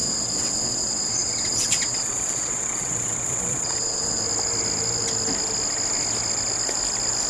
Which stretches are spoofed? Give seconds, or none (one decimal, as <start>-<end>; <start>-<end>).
0.0-4.2